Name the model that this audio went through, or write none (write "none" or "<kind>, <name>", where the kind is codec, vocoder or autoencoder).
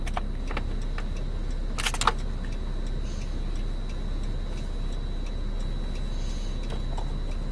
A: none